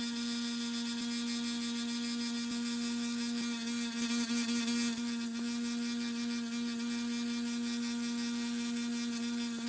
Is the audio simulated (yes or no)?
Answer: no